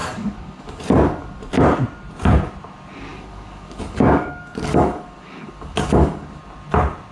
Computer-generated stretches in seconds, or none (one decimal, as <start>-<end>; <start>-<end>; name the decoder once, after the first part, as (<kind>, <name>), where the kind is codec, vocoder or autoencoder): 0.0-1.5 (codec, DAC); 3.1-6.4